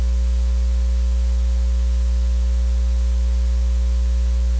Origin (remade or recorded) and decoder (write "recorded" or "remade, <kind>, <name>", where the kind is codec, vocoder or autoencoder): recorded